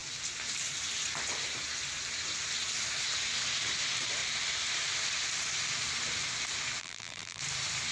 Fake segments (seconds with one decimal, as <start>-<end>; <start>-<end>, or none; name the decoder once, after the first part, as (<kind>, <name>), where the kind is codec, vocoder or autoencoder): 6.8-7.4 (vocoder, BigVGAN v2)